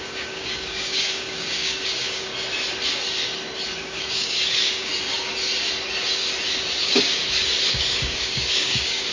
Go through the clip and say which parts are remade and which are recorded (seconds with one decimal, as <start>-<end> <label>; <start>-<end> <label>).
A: 0.0-2.3 remade; 2.3-3.8 recorded; 3.8-4.9 remade; 4.9-6.8 recorded; 6.8-7.2 remade; 7.2-7.7 recorded; 7.7-9.1 remade